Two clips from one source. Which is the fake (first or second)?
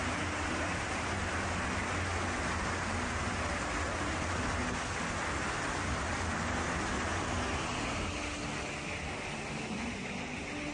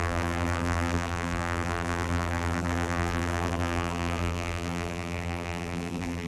second